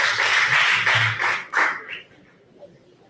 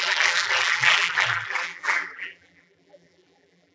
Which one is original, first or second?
first